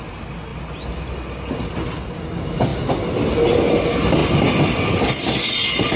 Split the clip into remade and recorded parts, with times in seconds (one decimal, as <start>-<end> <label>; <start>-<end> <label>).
0.0-6.0 recorded